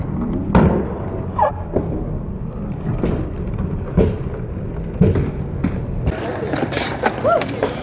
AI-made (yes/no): no